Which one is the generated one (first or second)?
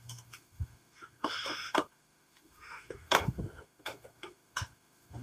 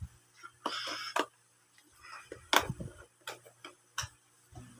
first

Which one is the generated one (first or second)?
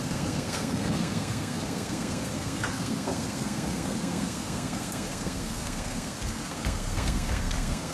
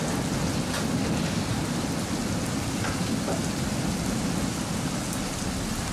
first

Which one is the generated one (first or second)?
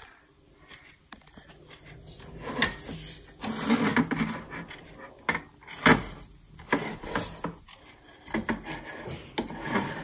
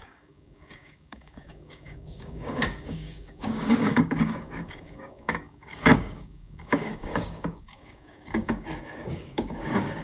second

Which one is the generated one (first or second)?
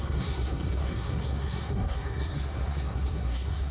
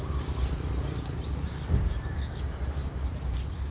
first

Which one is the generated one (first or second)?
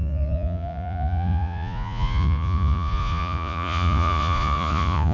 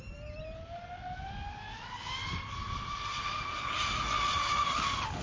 first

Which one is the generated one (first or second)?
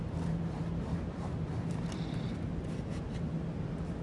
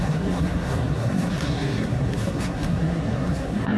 second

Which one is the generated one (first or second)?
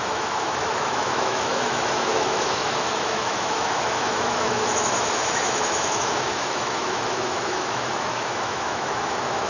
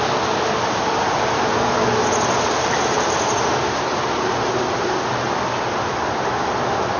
first